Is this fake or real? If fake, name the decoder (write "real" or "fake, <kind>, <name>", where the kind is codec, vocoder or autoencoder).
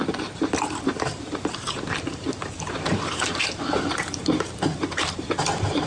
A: fake, vocoder, BigVGAN v2